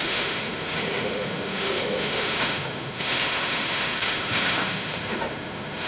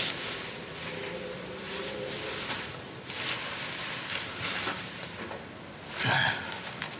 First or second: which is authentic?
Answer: second